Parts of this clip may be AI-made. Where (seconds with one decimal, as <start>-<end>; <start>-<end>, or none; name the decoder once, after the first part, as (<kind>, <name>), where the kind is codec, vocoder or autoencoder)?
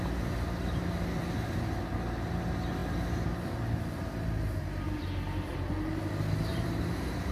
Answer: 6.5-7.3 (vocoder, BigVGAN v2)